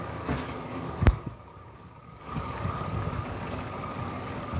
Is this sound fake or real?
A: fake